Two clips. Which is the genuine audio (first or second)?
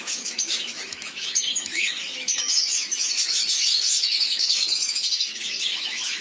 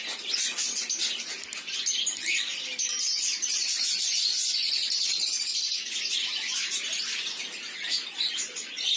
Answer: second